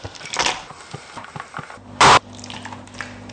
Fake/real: real